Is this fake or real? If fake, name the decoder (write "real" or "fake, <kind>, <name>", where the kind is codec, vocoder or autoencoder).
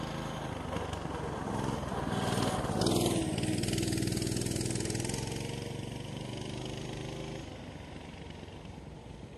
real